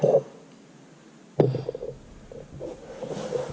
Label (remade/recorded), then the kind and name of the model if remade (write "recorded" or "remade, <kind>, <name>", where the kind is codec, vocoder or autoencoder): recorded